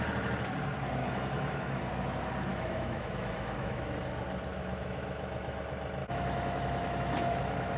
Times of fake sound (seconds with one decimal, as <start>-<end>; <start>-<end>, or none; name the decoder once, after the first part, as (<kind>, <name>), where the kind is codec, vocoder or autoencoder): 1.0-1.9 (autoencoder, DAC-VAE); 2.5-4.0; 4.5-5.6; 6.0-7.8